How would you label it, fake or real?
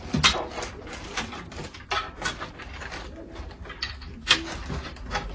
real